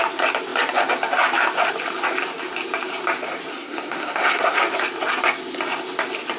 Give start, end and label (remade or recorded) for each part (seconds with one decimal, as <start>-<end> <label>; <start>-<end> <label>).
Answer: 0.0-3.5 recorded; 3.5-4.6 remade; 4.6-6.4 recorded